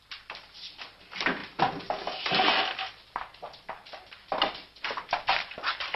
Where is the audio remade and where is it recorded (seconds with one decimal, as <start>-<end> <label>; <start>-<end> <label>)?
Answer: 0.0-6.0 recorded

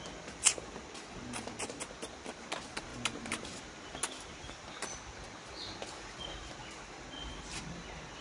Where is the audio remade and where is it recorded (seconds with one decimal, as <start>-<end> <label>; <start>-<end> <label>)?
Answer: 0.0-8.2 recorded

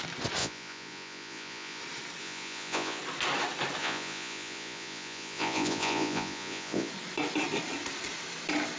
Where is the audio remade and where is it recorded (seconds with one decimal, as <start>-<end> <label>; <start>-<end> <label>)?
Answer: 0.0-0.4 recorded; 0.4-1.8 remade; 1.8-2.2 recorded; 2.2-3.0 remade; 3.0-3.8 recorded; 3.8-6.9 remade; 6.9-8.8 recorded

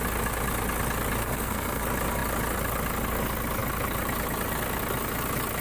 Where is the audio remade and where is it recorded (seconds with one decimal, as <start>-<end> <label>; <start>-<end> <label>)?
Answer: 0.0-1.2 recorded; 1.2-1.8 remade; 1.8-5.6 recorded

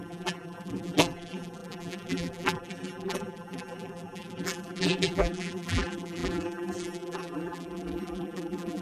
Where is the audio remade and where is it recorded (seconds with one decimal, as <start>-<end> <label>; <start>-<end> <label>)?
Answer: 0.0-8.8 remade

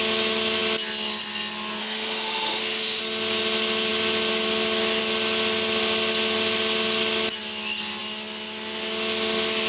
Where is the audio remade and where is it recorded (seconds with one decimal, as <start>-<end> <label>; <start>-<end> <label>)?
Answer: 0.0-1.8 recorded; 1.8-3.0 remade; 3.0-9.7 recorded

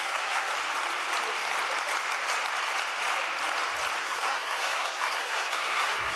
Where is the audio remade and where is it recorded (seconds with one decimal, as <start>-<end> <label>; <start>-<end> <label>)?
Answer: 0.0-0.5 remade; 0.5-4.0 recorded; 4.0-6.2 remade